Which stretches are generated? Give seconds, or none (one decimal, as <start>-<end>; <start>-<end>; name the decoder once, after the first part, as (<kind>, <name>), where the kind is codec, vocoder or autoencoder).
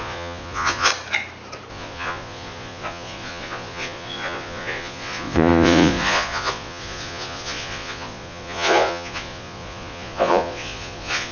0.0-0.9 (vocoder, Vocos); 1.7-11.3